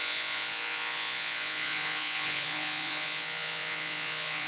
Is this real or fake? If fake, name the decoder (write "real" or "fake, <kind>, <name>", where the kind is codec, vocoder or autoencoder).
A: fake, vocoder, Vocos